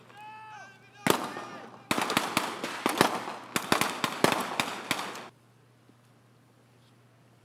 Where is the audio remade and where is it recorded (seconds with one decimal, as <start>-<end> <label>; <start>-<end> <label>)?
0.0-7.4 recorded